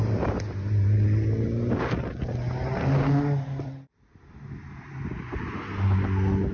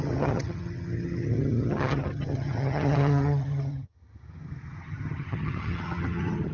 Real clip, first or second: first